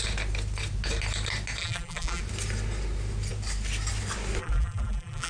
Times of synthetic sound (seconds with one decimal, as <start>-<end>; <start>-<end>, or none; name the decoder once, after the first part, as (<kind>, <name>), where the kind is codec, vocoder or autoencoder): 1.6-2.2 (vocoder, BigVGAN v2); 4.4-5.3